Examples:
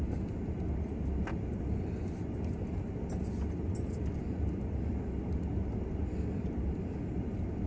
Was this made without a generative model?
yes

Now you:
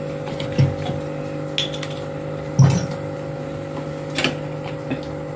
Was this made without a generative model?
yes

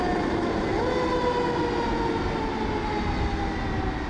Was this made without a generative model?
yes